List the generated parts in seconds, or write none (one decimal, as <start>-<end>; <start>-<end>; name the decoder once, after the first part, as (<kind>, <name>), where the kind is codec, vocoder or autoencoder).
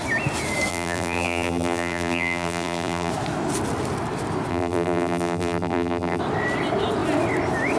0.7-3.1 (vocoder, BigVGAN v2); 4.5-6.2